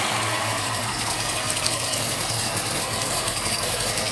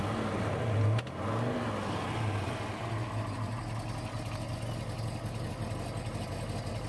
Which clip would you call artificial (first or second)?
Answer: first